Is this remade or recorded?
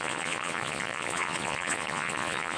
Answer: remade